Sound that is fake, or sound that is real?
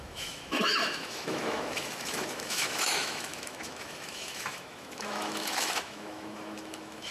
fake